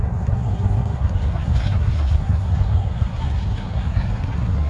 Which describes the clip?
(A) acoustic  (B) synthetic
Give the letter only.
B